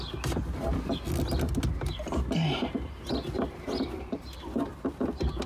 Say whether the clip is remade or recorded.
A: recorded